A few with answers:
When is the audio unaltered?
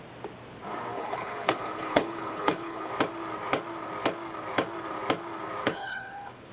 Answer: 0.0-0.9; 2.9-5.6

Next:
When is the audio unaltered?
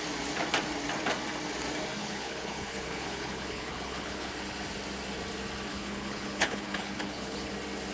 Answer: 0.0-2.0; 4.3-5.7; 7.5-7.9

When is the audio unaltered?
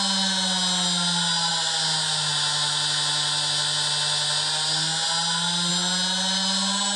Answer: 0.0-7.0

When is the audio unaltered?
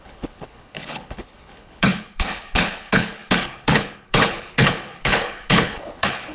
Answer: none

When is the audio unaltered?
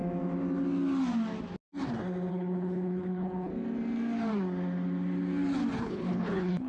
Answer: 0.0-2.3; 3.5-5.8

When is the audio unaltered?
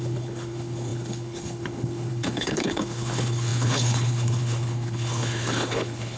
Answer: none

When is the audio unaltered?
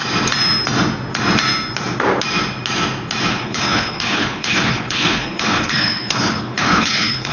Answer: 0.0-3.3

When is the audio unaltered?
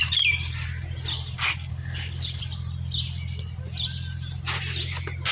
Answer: 0.0-1.7; 2.4-5.3